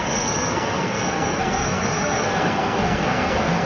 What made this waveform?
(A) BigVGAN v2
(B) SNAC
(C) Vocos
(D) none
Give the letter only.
B